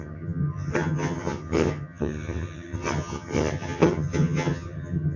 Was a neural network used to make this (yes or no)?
yes